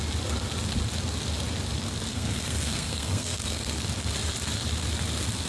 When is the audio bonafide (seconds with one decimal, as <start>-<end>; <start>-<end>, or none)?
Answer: 0.0-2.1; 3.8-5.5